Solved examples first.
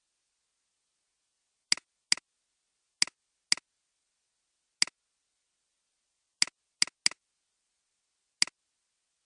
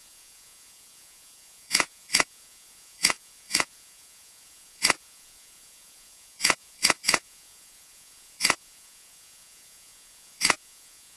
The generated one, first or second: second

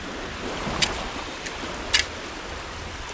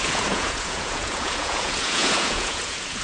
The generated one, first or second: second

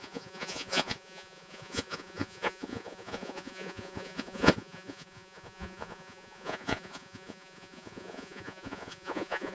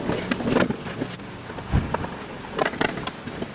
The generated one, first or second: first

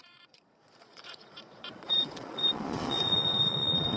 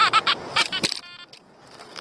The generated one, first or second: first